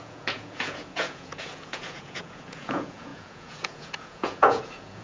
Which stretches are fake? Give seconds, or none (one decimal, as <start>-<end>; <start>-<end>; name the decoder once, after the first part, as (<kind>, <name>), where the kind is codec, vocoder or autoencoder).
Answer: 0.0-5.0 (vocoder, Vocos)